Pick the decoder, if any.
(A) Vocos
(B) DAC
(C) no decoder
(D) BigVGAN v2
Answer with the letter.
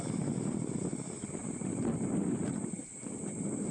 D